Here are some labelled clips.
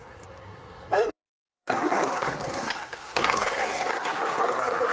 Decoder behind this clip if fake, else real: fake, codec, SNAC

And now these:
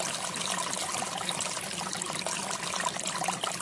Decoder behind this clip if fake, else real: real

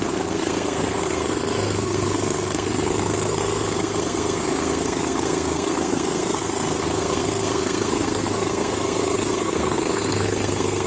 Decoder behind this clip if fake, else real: fake, codec, SNAC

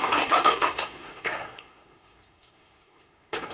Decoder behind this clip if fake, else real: fake, codec, SNAC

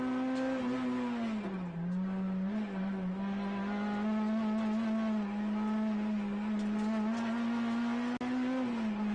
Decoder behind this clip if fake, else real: real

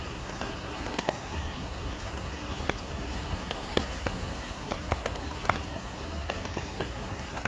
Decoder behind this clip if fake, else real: fake, codec, SNAC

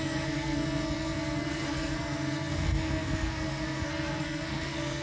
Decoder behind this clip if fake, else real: fake, codec, SNAC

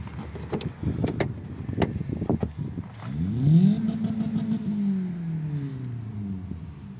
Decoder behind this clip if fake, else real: real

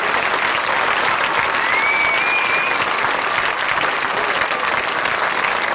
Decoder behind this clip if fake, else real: real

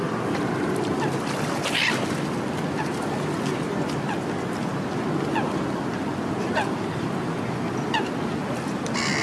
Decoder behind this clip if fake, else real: real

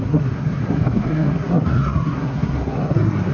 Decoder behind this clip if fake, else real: fake, codec, SNAC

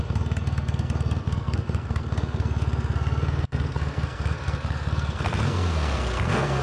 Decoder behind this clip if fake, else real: fake, codec, SNAC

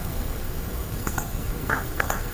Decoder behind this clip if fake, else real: fake, codec, SNAC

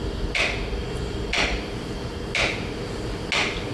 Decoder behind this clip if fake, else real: real